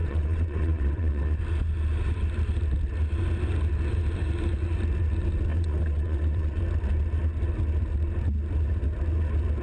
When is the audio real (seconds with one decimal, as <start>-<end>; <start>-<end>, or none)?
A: 1.4-5.5; 6.6-9.6